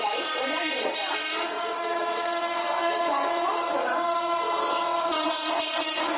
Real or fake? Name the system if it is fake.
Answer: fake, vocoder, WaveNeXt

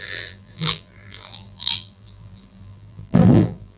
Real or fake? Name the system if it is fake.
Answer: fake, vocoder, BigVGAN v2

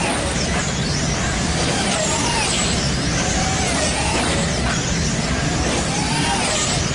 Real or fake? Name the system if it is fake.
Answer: real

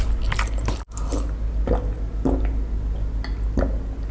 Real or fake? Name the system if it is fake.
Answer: real